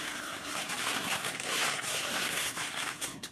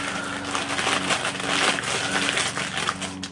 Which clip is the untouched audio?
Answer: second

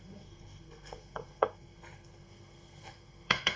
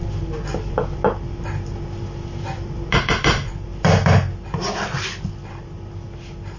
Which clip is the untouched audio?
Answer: second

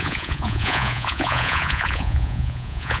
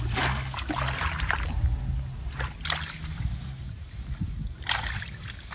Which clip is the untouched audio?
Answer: second